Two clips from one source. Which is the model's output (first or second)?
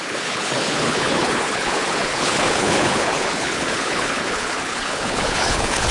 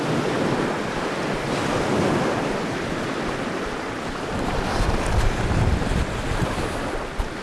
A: first